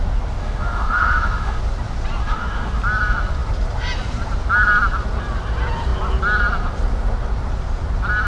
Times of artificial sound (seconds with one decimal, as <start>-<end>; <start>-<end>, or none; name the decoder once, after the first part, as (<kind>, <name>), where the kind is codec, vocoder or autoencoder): 0.4-1.6 (autoencoder, DAC-VAE); 2.2-2.8